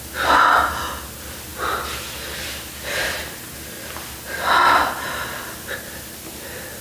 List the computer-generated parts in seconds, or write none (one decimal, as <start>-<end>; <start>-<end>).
none